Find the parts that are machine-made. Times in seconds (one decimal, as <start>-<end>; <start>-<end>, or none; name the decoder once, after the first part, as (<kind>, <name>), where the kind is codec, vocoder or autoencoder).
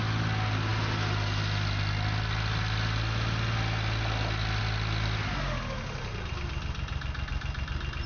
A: none